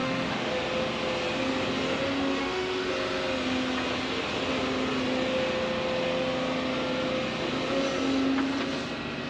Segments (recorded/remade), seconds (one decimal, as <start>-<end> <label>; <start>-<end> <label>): 0.0-0.5 remade; 0.5-2.4 recorded; 2.4-2.9 remade; 2.9-9.3 recorded